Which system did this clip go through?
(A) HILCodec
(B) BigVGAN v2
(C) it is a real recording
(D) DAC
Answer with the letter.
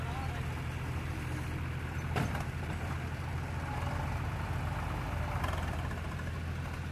C